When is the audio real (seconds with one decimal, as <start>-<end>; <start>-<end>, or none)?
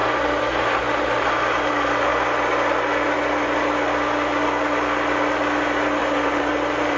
2.1-6.0